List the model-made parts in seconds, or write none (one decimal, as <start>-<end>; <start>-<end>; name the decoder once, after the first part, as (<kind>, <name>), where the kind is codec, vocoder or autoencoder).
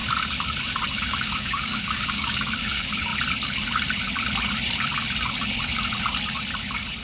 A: 0.9-3.1 (codec, DAC)